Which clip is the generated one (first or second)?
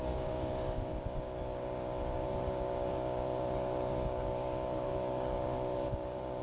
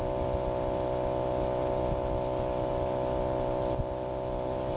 first